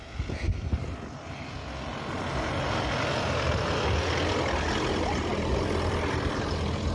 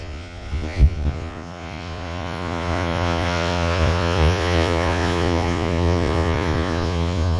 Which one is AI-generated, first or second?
second